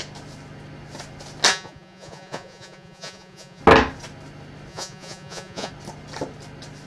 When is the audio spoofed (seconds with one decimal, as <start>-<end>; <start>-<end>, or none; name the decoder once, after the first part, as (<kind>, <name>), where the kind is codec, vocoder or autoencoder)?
1.5-3.6 (vocoder, Vocos); 4.7-5.7